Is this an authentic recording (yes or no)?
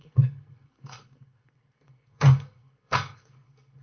no